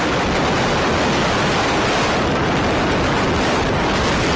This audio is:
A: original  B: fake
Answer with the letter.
A